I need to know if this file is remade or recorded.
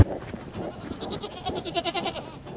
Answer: remade